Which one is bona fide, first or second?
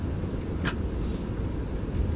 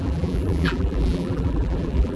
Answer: first